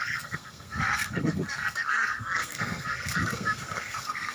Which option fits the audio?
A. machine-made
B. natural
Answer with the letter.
A